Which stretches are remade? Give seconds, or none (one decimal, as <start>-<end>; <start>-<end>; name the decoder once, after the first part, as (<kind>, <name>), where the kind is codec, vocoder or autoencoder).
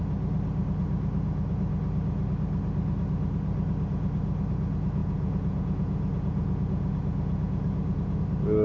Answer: 5.0-8.2 (vocoder, Vocos)